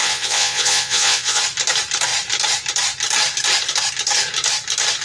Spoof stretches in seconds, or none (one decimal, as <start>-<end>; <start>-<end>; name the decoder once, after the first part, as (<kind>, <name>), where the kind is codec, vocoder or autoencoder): 0.0-1.4 (vocoder, Vocos)